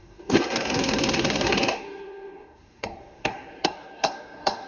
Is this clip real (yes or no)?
no